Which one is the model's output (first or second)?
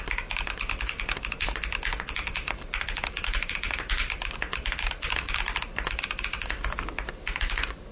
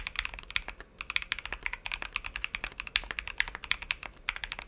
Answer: first